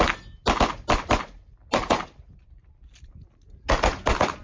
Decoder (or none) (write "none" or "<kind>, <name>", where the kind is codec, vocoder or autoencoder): none